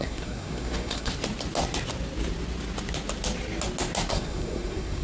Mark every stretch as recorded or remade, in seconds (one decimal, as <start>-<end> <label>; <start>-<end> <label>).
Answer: 0.0-1.1 remade; 1.1-4.1 recorded; 4.1-5.0 remade